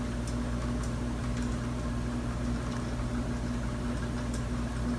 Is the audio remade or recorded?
recorded